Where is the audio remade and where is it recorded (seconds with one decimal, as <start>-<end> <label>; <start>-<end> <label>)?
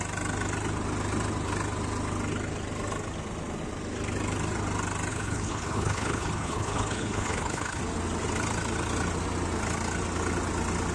0.0-5.1 recorded; 5.1-7.8 remade; 7.8-10.9 recorded